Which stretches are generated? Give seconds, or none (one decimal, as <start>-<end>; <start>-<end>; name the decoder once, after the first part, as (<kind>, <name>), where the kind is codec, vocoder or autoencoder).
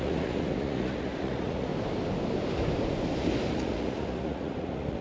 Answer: 0.0-1.7 (vocoder, Vocos); 3.5-5.0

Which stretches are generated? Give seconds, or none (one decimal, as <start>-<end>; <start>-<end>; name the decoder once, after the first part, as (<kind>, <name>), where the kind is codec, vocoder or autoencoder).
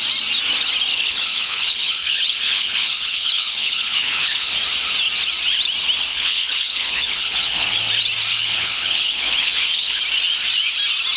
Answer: 0.9-4.5 (codec, HILCodec); 6.1-7.8; 8.3-10.0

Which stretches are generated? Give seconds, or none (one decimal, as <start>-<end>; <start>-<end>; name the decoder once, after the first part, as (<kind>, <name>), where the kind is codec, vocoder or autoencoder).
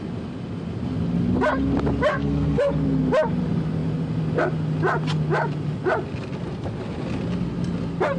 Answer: 2.1-2.7 (codec, SNAC)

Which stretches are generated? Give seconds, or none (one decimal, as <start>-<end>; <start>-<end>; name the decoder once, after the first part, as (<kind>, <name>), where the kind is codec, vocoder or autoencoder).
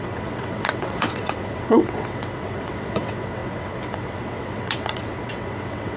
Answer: 0.0-6.0 (vocoder, WaveNeXt)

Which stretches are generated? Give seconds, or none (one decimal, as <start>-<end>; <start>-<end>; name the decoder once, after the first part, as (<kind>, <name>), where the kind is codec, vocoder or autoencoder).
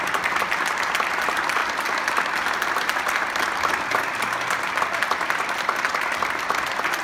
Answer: none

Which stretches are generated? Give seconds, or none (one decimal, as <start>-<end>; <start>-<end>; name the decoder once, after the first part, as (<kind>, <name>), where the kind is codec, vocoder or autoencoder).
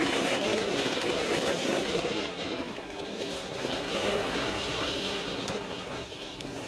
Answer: 0.0-6.7 (codec, SNAC)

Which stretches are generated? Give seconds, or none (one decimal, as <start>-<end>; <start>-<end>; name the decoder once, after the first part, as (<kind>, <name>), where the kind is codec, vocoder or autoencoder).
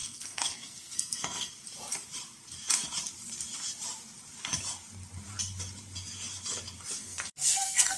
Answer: 0.0-1.5 (codec, SNAC); 7.0-8.0